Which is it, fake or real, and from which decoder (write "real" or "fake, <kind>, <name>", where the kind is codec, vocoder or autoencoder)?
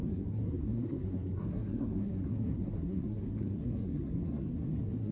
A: fake, codec, SNAC